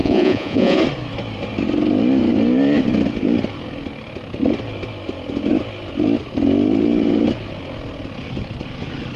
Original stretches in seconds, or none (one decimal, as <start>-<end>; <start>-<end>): 0.8-9.2